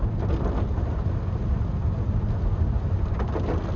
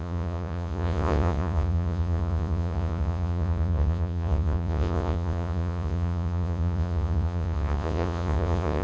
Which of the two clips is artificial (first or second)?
second